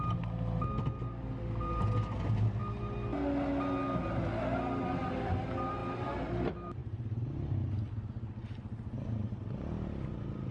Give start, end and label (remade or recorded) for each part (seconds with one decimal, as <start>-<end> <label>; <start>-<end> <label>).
0.0-6.8 recorded; 6.8-7.7 remade; 7.7-10.5 recorded